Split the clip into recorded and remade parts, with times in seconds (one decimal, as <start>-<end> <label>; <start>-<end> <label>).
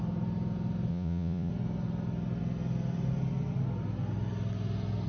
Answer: 0.0-0.9 recorded; 0.9-1.5 remade; 1.5-5.1 recorded